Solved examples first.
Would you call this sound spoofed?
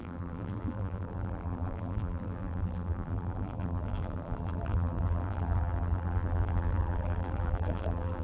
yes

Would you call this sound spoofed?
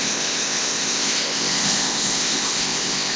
yes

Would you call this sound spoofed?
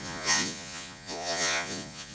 yes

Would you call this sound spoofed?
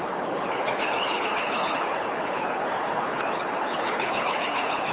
yes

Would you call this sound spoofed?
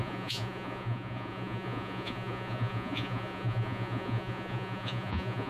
yes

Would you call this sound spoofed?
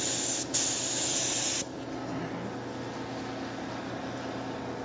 no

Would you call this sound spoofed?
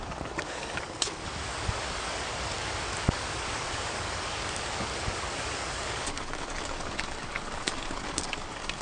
yes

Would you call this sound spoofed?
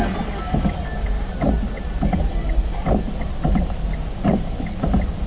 no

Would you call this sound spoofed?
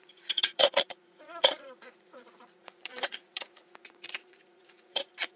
yes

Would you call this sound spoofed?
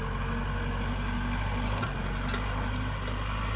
no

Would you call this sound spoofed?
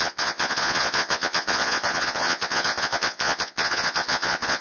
yes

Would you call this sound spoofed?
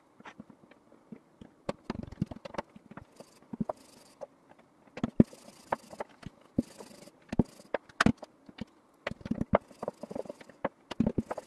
no